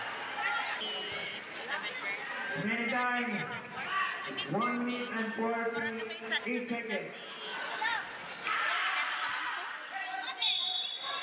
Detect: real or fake real